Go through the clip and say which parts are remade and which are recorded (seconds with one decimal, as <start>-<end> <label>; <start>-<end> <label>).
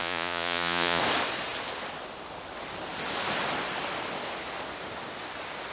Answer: 0.0-1.0 remade; 1.0-5.7 recorded